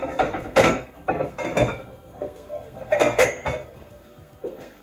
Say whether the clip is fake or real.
fake